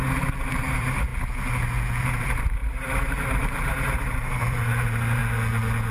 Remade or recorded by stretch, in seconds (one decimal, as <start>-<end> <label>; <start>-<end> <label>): 0.0-1.1 remade; 1.1-2.0 recorded; 2.0-5.2 remade; 5.2-5.9 recorded